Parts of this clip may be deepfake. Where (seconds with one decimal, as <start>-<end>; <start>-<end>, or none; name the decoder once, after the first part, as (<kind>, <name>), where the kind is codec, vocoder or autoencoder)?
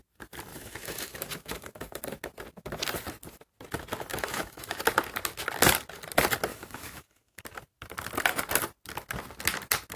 0.5-2.0 (autoencoder, DAC-VAE); 4.1-4.8; 6.5-7.4